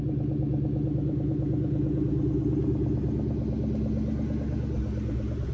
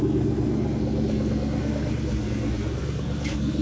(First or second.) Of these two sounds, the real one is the first